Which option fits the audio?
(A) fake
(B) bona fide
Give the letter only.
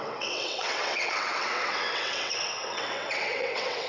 A